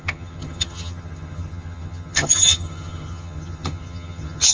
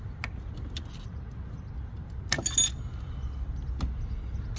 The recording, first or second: second